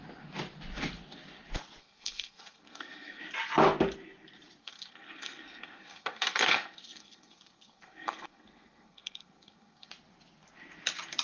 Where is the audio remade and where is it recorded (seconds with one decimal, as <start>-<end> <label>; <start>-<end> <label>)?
0.0-1.8 recorded; 1.8-3.2 remade; 3.2-4.6 recorded; 4.6-9.9 remade; 9.9-11.2 recorded